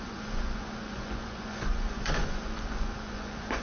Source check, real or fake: fake